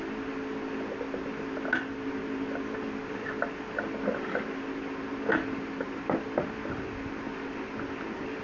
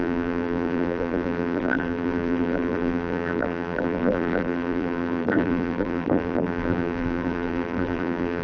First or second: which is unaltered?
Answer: first